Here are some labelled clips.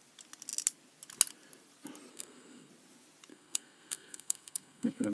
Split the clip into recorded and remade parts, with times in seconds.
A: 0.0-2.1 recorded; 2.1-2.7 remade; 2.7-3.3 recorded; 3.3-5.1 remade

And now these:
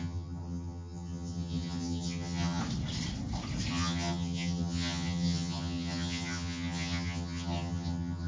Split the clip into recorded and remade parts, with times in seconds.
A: 0.0-2.6 remade; 2.6-3.7 recorded; 3.7-8.3 remade

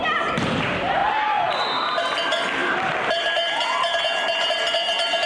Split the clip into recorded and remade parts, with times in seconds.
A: 0.0-5.3 recorded

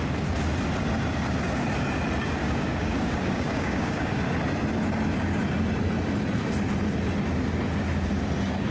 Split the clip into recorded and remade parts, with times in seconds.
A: 0.0-2.4 recorded; 2.4-4.2 remade; 4.2-8.7 recorded

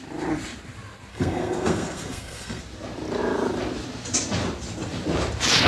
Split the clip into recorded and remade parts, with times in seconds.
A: 0.0-1.1 recorded; 1.1-2.6 remade; 2.6-5.7 recorded